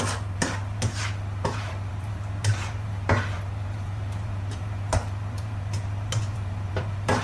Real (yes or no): no